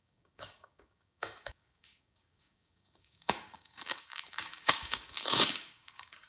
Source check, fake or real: fake